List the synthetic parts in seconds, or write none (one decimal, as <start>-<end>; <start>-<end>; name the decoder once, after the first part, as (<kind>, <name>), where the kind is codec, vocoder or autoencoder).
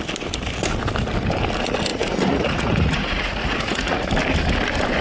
1.9-4.1 (vocoder, Vocos)